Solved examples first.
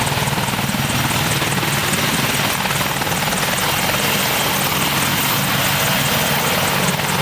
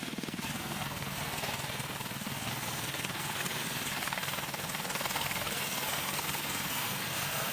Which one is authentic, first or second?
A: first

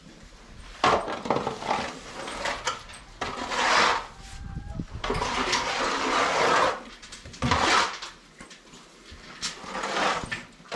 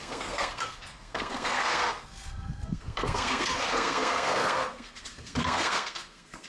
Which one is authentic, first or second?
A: first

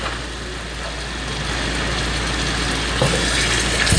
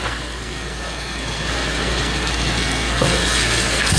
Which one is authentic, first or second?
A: first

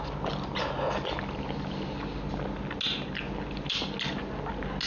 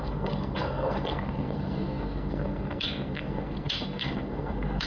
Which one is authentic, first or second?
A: first